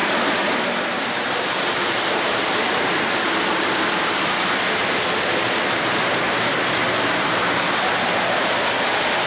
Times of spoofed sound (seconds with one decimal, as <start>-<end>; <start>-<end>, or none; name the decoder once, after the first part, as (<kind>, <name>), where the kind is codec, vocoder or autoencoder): none